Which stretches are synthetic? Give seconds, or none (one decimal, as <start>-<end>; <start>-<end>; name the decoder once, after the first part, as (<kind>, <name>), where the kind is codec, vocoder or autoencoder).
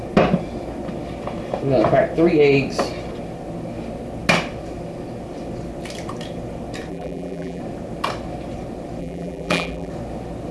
6.9-7.6 (vocoder, BigVGAN v2); 9.0-9.9